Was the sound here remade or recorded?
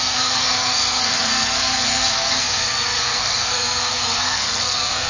remade